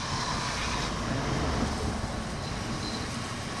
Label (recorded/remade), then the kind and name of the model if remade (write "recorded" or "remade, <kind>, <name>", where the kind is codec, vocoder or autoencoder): recorded